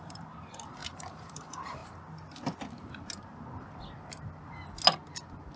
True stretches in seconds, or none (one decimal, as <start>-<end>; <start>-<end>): 1.8-5.6